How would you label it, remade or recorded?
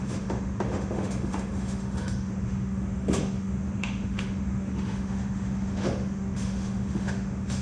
remade